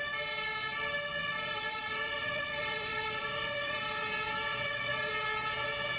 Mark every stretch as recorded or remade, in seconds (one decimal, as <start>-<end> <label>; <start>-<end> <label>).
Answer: 0.0-1.2 recorded; 1.2-3.8 remade; 3.8-4.5 recorded; 4.5-5.1 remade; 5.1-6.0 recorded